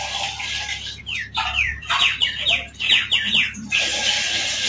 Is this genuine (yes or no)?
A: no